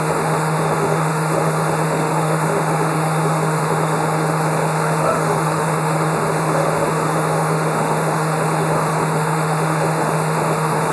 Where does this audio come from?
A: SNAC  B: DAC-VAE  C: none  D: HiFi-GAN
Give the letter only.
B